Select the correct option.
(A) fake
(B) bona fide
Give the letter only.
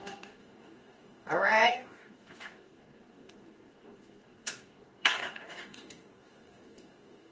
A